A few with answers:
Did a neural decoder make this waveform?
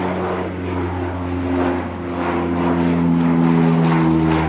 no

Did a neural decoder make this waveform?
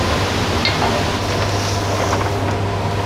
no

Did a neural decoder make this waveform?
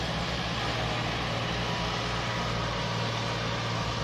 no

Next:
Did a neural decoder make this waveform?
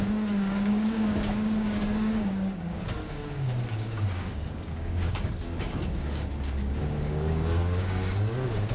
yes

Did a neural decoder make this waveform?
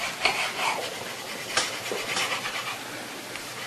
no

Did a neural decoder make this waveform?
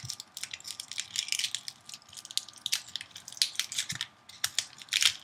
no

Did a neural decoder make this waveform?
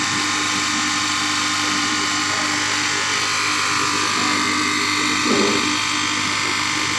yes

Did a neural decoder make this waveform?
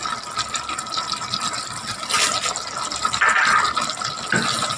no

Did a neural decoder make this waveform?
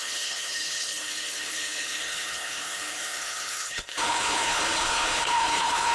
yes